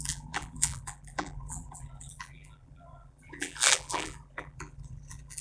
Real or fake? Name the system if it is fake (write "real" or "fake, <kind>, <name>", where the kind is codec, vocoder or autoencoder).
fake, vocoder, BigVGAN v2